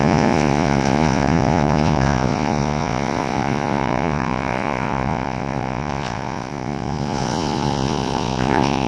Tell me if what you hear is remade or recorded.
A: remade